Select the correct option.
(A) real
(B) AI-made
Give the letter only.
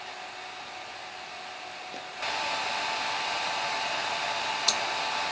A